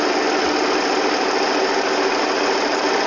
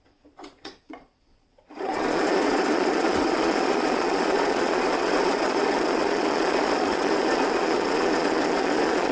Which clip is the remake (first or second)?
second